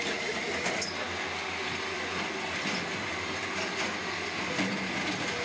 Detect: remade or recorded recorded